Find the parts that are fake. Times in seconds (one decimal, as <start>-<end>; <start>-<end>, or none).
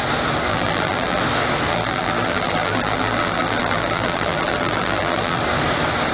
0.5-1.2; 1.7-5.4